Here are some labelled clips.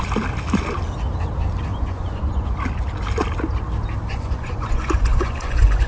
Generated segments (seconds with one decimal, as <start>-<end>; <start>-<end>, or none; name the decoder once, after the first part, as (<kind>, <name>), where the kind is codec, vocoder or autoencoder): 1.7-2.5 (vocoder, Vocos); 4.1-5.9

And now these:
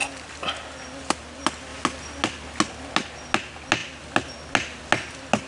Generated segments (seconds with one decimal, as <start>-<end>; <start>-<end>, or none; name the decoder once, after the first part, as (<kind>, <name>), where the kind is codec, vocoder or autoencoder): none

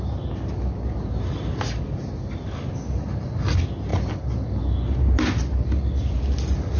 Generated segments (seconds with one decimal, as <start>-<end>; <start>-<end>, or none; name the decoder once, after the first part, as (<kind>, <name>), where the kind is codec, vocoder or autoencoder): none

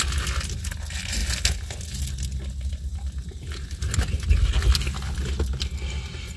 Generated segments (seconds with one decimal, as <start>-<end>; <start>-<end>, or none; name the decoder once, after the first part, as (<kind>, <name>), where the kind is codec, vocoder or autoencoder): none

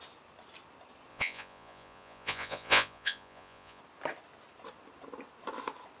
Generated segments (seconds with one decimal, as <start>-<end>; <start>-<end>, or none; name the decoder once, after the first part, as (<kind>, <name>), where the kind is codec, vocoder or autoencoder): 1.1-3.8 (vocoder, Vocos)